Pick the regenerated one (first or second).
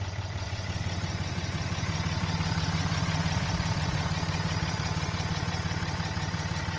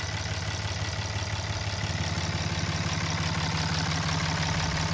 first